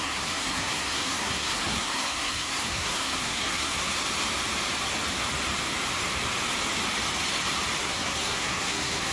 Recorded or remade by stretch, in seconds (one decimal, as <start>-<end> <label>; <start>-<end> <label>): 0.0-3.9 remade; 3.9-7.8 recorded; 7.8-9.1 remade